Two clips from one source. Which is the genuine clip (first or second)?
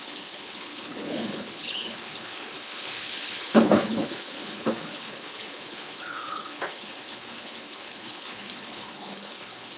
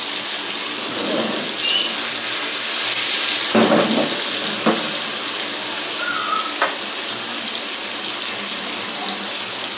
second